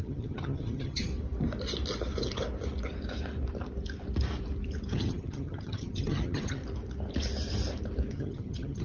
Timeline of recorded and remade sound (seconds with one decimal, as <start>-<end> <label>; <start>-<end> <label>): 0.0-1.1 remade; 1.1-4.9 recorded; 4.9-6.6 remade; 6.6-8.1 recorded; 8.1-8.8 remade